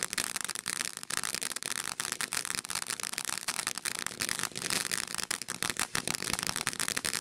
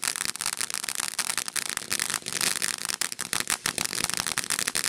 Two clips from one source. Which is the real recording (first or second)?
second